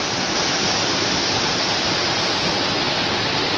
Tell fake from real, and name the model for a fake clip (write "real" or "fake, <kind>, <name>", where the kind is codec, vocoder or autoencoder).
real